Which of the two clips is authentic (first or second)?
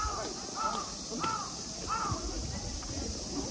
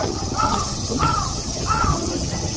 first